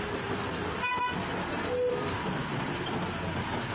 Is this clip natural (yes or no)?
yes